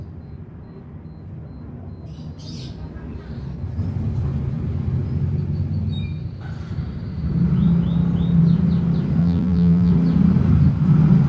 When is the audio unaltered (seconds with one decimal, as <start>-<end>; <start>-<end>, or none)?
0.0-9.2; 9.9-11.3